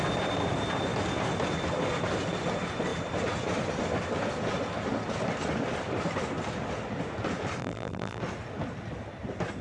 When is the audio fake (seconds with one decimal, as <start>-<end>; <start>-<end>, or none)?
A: 7.6-8.2